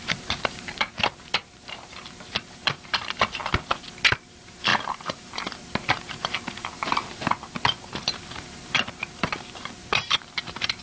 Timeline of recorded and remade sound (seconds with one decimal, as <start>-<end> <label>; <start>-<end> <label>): 0.0-3.4 remade; 3.4-4.3 recorded; 4.3-10.8 remade